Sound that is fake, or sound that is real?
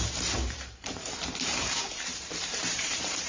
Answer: fake